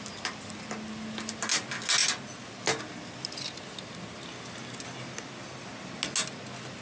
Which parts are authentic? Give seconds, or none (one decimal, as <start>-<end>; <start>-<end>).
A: 0.0-6.8